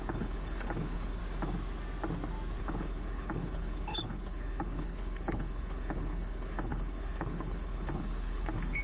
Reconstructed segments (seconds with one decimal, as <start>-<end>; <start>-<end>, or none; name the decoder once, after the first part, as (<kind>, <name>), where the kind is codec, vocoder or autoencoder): 0.0-1.2 (codec, HILCodec); 2.6-8.8